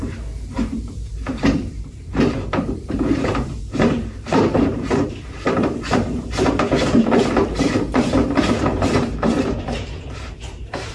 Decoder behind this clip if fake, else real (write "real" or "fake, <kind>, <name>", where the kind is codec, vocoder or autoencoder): fake, vocoder, BigVGAN v2